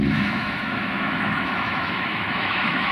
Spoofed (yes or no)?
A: yes